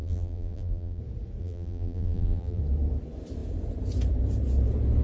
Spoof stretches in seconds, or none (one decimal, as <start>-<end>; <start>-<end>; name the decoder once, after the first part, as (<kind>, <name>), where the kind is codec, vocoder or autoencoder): 0.0-1.0 (vocoder, BigVGAN v2); 1.4-2.6